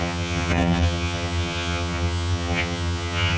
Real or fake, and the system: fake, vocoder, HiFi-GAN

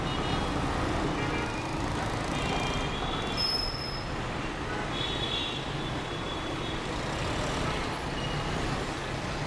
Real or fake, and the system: real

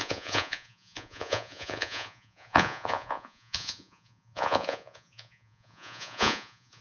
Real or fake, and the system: fake, vocoder, Vocos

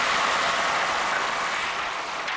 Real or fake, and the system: real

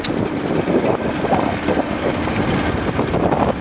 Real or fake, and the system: real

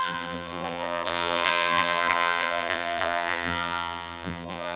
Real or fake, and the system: fake, vocoder, BigVGAN v2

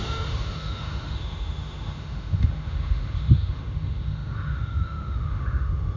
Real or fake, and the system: fake, autoencoder, DAC-VAE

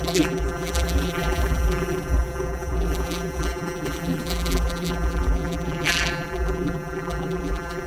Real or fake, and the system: fake, vocoder, BigVGAN v2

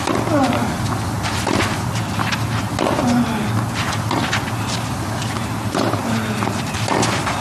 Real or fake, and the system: real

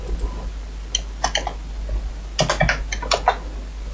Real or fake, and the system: real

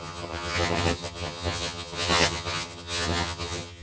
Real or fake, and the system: fake, vocoder, HiFi-GAN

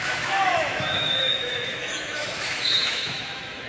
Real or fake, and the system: fake, autoencoder, DAC-VAE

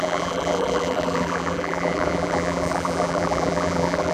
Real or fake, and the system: fake, vocoder, BigVGAN v2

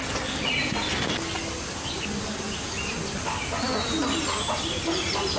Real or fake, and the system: real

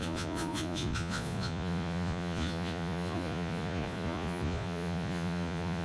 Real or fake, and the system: fake, vocoder, Vocos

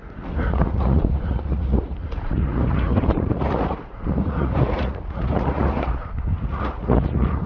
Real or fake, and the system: fake, vocoder, Vocos